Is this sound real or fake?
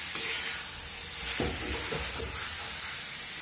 real